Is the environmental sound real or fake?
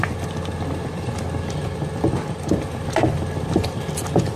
real